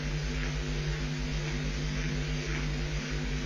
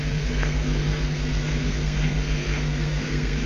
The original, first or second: first